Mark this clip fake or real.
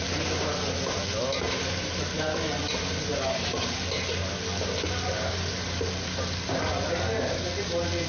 real